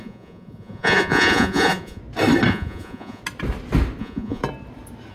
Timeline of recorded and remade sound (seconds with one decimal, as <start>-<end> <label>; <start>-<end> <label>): 0.0-2.0 remade; 2.0-2.5 recorded; 2.5-3.2 remade; 3.2-4.0 recorded; 4.0-4.4 remade; 4.4-5.1 recorded